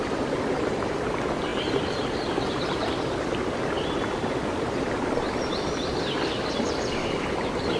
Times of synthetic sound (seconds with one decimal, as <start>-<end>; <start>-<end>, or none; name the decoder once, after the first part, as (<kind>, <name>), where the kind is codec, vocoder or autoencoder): 0.0-7.8 (vocoder, BigVGAN v2)